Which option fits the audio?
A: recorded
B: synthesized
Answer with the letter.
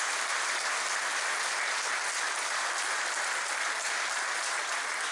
A